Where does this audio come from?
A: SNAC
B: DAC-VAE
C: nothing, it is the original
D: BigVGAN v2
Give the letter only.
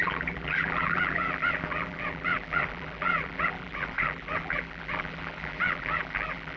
D